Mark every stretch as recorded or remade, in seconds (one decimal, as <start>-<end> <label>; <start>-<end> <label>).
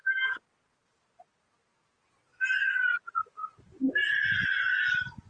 0.0-5.3 recorded